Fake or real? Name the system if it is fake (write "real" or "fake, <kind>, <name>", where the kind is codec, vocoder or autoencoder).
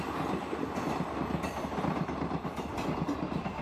real